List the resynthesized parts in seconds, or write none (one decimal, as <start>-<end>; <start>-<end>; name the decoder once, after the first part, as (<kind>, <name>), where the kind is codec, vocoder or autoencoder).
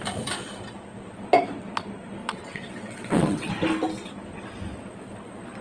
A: 2.2-3.5 (vocoder, WaveNeXt)